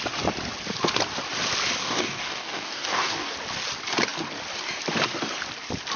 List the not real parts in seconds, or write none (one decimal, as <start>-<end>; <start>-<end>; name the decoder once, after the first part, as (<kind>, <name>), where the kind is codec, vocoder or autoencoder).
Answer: 1.8-3.3 (codec, DAC)